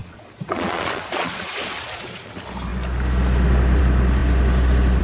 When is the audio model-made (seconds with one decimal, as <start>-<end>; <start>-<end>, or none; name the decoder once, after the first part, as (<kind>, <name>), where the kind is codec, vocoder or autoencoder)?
0.0-2.3 (vocoder, Vocos)